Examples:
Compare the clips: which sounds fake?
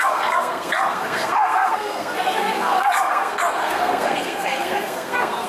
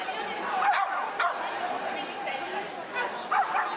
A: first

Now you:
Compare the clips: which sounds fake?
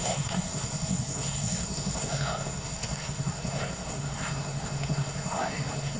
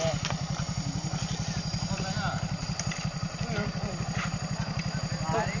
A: first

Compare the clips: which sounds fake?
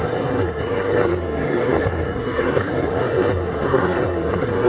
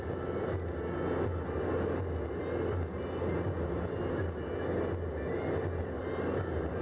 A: first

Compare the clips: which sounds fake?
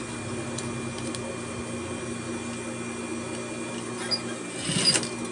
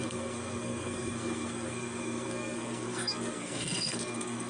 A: second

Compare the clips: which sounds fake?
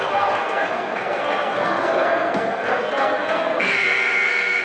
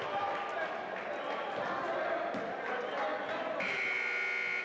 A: first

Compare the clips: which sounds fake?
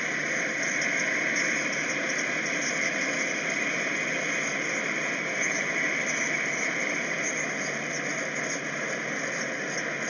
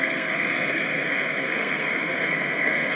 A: second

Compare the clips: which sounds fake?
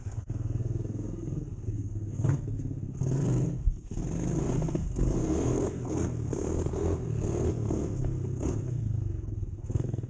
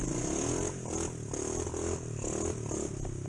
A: first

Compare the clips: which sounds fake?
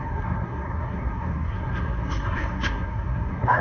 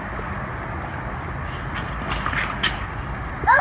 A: first